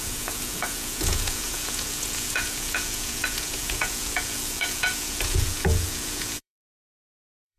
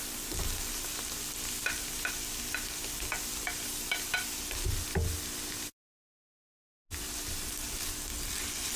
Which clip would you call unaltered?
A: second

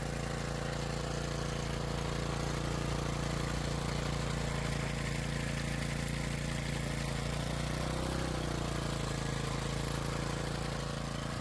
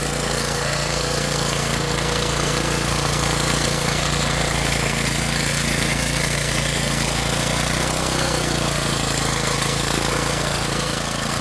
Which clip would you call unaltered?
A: first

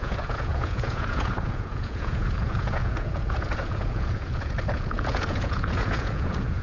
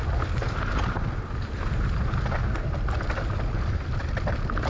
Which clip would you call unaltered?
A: second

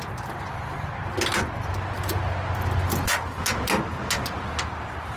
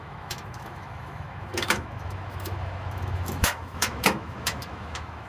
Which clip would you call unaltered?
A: first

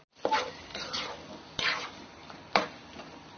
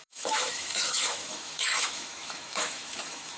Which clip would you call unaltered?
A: first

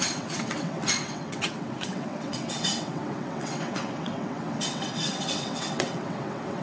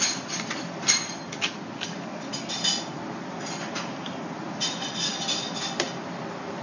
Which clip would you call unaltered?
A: second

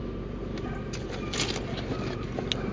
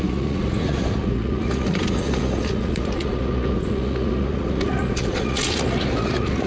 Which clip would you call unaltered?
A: first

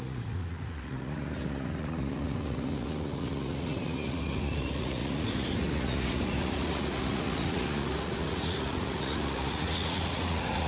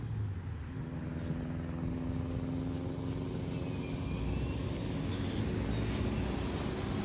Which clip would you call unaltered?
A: second